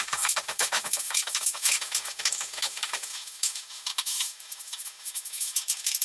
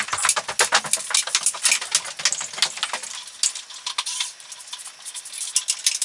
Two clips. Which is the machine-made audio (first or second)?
first